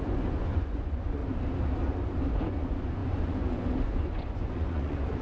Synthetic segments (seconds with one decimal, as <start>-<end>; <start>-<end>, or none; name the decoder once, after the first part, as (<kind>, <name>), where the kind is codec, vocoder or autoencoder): 0.0-1.2 (vocoder, Vocos); 2.3-5.2